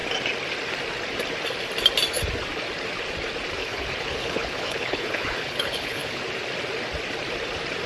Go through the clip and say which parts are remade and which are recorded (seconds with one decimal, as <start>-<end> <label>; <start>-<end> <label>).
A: 0.0-3.6 recorded; 3.6-6.2 remade; 6.2-7.9 recorded